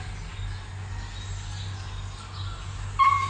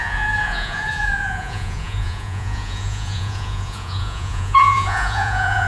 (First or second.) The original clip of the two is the first